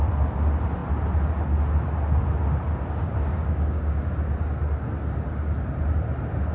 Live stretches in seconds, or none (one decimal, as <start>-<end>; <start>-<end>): 0.0-3.4; 4.0-6.5